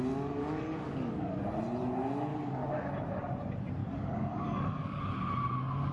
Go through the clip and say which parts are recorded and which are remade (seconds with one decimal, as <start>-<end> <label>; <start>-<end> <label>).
0.0-0.4 recorded; 0.4-1.4 remade; 1.4-2.3 recorded; 2.3-2.9 remade; 2.9-3.8 recorded; 3.8-5.0 remade; 5.0-5.9 recorded